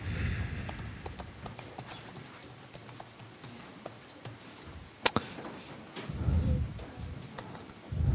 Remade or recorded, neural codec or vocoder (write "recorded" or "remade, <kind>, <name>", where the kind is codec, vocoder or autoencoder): recorded